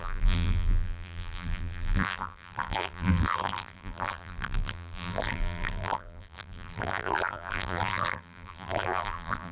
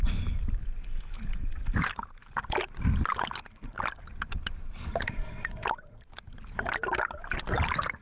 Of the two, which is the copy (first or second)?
first